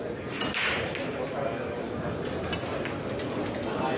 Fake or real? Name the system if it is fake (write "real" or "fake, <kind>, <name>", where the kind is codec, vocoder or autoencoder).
real